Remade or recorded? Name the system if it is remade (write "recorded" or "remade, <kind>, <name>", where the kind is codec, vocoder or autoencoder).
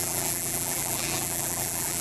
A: remade, vocoder, BigVGAN v2